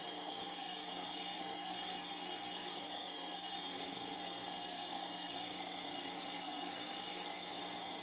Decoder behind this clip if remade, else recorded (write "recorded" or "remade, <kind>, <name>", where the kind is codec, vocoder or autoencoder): remade, codec, SNAC